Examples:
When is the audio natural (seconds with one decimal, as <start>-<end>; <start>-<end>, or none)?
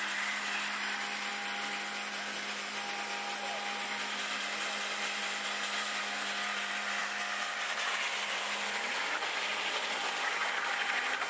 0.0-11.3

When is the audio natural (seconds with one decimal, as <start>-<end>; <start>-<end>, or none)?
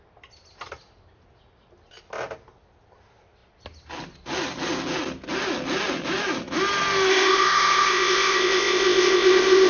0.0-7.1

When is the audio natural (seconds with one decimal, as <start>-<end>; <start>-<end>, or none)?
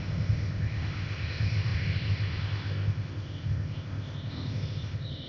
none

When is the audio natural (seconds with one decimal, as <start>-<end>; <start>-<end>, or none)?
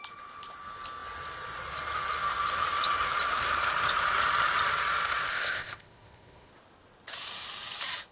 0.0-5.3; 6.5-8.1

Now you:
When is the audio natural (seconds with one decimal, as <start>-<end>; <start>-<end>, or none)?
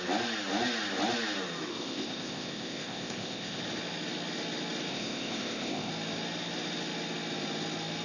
0.0-1.7; 3.6-4.9; 5.9-8.0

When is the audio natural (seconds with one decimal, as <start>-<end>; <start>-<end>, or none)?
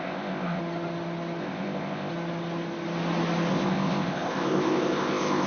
0.6-1.4; 2.1-3.5